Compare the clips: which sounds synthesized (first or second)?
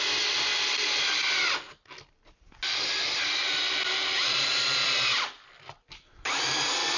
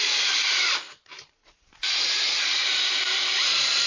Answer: second